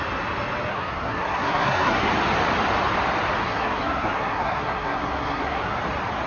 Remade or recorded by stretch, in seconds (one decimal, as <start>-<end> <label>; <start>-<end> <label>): 0.0-0.7 recorded; 0.7-2.1 remade; 2.1-3.4 recorded; 3.4-5.8 remade; 5.8-6.3 recorded